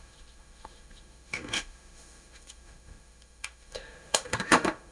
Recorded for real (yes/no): no